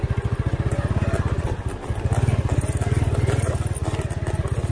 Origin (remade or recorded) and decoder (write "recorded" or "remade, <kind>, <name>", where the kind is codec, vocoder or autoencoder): recorded